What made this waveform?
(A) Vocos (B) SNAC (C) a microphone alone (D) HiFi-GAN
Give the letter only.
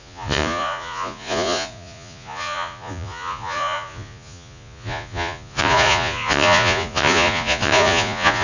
A